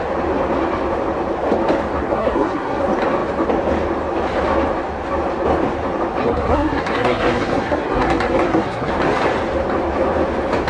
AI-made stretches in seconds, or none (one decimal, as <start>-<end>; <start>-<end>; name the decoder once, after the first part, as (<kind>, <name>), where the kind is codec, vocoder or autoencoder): 2.0-2.8 (codec, SNAC); 6.2-8.9